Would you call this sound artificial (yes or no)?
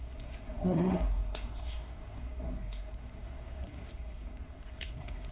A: yes